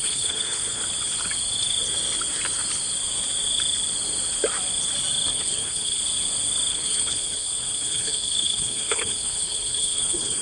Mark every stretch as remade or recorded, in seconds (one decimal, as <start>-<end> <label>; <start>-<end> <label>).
0.0-0.8 remade; 0.8-5.3 recorded; 5.3-6.0 remade; 6.0-6.7 recorded; 6.7-10.4 remade